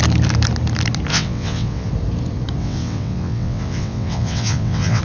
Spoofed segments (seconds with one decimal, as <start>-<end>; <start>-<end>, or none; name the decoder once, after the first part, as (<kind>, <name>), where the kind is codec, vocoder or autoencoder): 1.1-1.9 (vocoder, WaveNeXt); 2.6-5.0